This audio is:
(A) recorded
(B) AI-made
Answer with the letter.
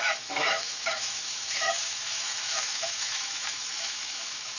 B